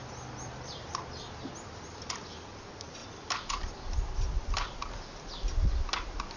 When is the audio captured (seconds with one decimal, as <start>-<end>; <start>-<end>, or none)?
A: 0.9-3.0; 5.2-6.4